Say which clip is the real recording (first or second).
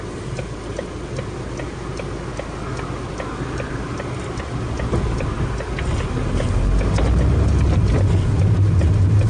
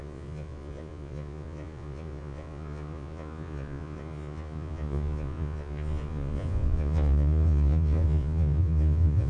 first